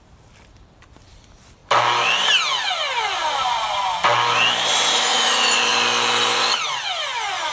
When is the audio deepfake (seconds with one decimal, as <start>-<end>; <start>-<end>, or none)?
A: 0.0-1.6; 5.3-7.5